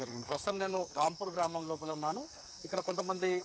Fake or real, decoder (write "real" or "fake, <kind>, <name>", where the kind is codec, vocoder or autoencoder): fake, codec, SNAC